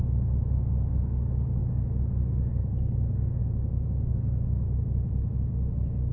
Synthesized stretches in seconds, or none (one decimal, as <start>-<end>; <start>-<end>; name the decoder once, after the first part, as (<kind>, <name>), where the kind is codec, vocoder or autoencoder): none

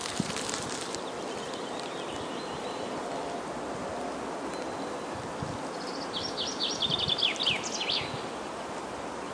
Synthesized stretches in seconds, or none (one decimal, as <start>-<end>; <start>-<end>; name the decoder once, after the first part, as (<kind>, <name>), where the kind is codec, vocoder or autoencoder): 0.0-1.0 (vocoder, BigVGAN v2)

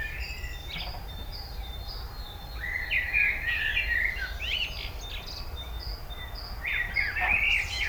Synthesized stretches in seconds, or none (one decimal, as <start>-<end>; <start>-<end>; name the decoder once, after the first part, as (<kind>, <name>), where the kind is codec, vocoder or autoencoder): 6.7-7.9 (vocoder, BigVGAN v2)

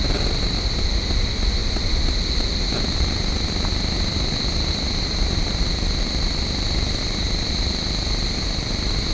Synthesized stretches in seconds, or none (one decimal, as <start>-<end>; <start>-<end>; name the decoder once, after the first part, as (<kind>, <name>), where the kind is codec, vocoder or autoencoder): none

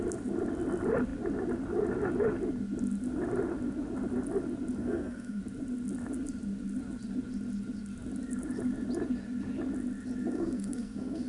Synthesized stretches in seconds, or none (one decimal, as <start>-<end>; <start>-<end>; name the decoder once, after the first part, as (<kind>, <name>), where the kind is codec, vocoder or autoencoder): 4.8-5.4 (codec, SNAC); 10.2-11.3